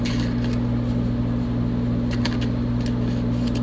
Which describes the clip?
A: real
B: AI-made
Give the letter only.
A